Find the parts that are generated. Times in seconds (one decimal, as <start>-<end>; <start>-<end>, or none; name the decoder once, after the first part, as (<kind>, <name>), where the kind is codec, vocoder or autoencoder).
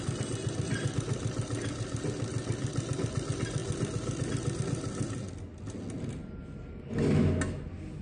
none